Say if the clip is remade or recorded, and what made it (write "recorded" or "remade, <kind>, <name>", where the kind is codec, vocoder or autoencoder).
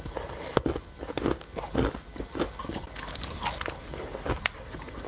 recorded